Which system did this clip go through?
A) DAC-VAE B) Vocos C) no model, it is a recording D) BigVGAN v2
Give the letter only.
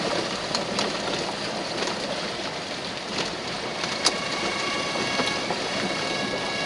D